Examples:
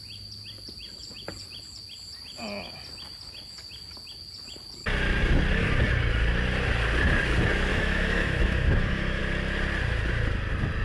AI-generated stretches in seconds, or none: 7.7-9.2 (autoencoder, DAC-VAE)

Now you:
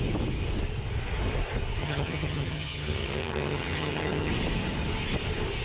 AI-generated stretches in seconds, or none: 1.8-4.3 (vocoder, HiFi-GAN)

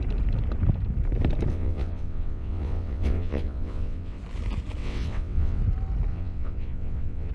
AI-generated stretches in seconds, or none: 1.5-4.2 (vocoder, WaveNeXt); 4.8-5.6; 6.1-7.3